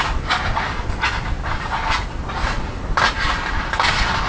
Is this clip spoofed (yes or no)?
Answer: no